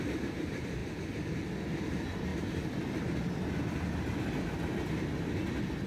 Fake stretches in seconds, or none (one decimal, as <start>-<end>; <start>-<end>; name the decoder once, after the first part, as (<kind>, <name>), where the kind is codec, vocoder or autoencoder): 0.0-0.8 (vocoder, BigVGAN v2); 1.8-2.3